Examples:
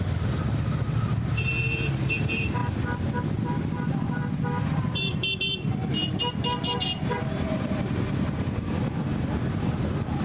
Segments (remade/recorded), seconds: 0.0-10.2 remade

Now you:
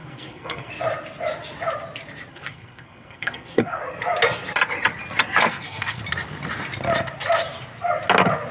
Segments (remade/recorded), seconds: 0.0-0.7 remade; 0.7-2.3 recorded; 2.3-3.8 remade; 3.8-5.4 recorded; 5.4-6.0 remade; 6.0-8.5 recorded

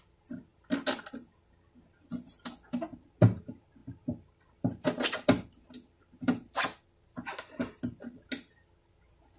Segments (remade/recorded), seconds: 0.0-9.4 recorded